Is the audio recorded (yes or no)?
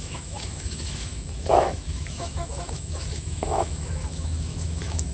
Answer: no